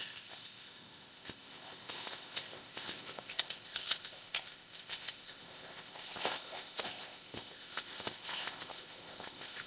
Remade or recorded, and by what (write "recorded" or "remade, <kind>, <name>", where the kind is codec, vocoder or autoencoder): remade, codec, ZipCodec